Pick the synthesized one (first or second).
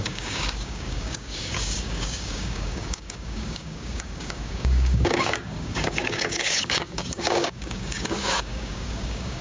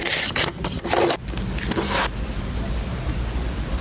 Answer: first